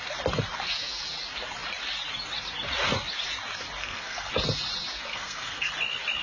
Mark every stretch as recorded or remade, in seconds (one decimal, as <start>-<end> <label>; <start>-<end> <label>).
0.0-3.8 recorded; 3.8-4.3 remade; 4.3-5.1 recorded; 5.1-5.7 remade; 5.7-6.2 recorded